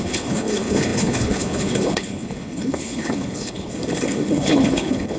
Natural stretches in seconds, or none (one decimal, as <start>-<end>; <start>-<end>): 3.7-4.3